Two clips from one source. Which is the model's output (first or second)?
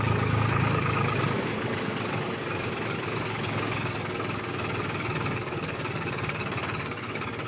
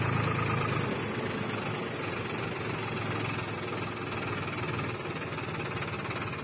first